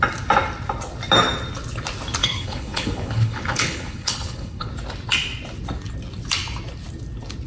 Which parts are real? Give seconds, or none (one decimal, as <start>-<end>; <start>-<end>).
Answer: 0.0-2.2; 4.7-7.5